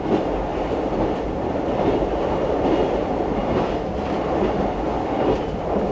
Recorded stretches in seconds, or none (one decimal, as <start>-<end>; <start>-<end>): 0.0-0.5; 3.2-5.9

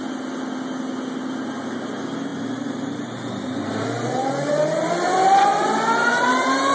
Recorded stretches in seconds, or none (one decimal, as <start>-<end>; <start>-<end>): 0.0-2.3; 4.9-6.7

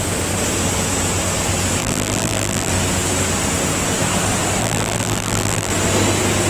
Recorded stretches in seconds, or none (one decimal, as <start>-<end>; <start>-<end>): 0.0-1.8; 2.7-4.6; 5.7-6.5